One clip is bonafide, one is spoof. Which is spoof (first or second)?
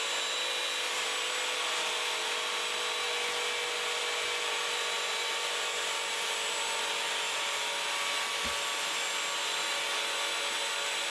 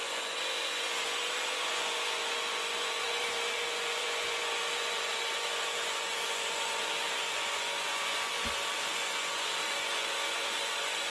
second